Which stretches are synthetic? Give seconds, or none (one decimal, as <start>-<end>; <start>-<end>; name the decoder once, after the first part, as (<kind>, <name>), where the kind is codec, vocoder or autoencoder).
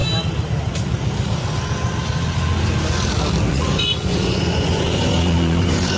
3.5-6.0 (vocoder, Vocos)